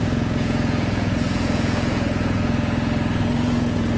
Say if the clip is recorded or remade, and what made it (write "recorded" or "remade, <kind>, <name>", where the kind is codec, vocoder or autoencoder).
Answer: remade, vocoder, Vocos